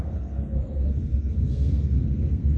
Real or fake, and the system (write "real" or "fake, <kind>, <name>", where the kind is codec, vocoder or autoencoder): fake, codec, SNAC